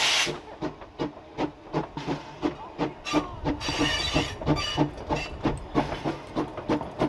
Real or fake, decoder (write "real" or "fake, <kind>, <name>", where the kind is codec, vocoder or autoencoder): real